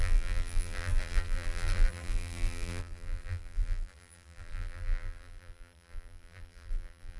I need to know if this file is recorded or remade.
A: remade